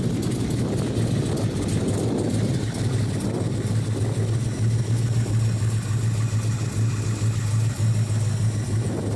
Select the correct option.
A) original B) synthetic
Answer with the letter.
A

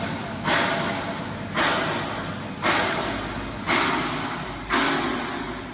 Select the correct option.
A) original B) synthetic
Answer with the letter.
A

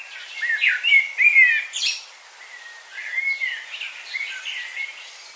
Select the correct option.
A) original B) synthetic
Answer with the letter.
A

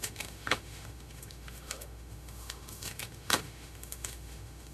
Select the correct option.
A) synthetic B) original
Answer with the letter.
A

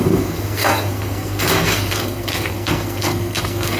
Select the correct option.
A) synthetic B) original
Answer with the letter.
A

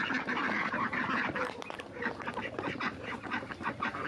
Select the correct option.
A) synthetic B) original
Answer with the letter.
A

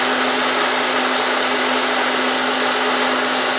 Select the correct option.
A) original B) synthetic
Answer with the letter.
A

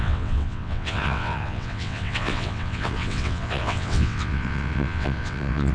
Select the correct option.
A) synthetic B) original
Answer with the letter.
A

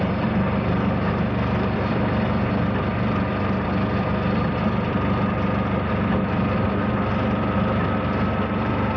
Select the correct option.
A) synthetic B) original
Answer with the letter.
B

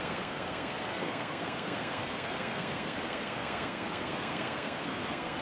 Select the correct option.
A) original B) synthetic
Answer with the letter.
B